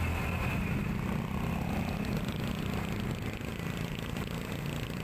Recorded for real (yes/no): yes